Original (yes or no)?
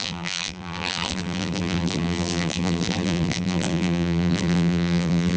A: no